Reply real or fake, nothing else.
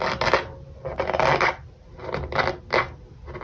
real